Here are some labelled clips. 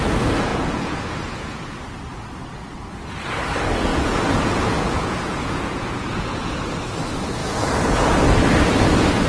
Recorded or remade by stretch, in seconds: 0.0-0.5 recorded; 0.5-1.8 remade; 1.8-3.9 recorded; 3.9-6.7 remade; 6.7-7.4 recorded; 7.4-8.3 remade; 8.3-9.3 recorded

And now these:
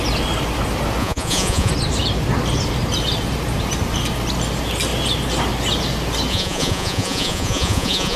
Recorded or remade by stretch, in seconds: 0.0-1.0 recorded; 1.0-1.7 remade; 1.7-6.3 recorded; 6.3-8.2 remade

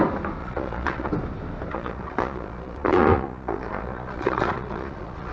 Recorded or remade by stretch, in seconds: 0.0-0.4 recorded; 0.4-1.1 remade; 1.1-1.7 recorded; 1.7-5.3 remade

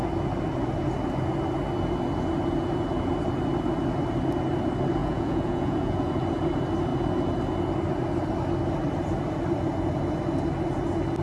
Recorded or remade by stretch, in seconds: 0.0-5.0 recorded; 5.0-6.1 remade; 6.1-11.2 recorded

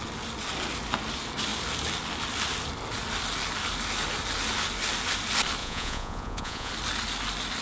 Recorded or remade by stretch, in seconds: 0.0-5.6 recorded; 5.6-6.7 remade; 6.7-7.6 recorded

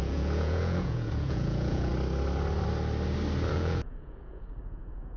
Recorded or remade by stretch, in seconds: 0.0-1.9 remade; 1.9-3.5 recorded; 3.5-5.2 remade

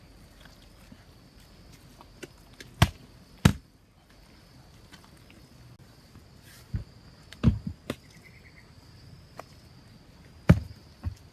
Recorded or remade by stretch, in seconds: 0.0-11.3 recorded

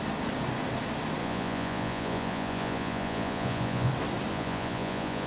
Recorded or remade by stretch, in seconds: 0.0-1.2 recorded; 1.2-3.9 remade; 3.9-4.3 recorded; 4.3-5.3 remade